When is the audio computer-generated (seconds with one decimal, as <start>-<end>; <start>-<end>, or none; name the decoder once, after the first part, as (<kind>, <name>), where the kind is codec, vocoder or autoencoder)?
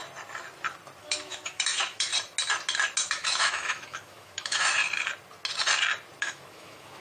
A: 1.0-2.1 (autoencoder, DAC-VAE); 3.1-4.8; 6.2-7.0